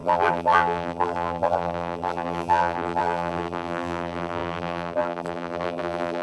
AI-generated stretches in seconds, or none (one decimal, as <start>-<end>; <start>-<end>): 0.0-6.2

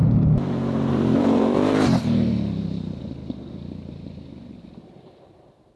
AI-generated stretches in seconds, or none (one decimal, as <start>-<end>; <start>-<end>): 0.0-5.8

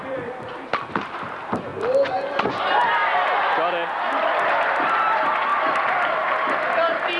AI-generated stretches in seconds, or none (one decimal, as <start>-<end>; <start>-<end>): 0.0-0.5; 5.5-6.1

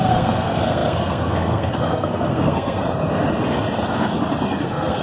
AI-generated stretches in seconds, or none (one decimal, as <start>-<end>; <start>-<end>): 0.0-2.8; 4.6-5.0

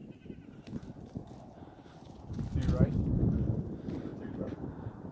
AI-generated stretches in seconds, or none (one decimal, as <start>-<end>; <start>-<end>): none